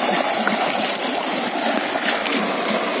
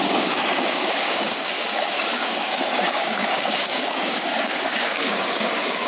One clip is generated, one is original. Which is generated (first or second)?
second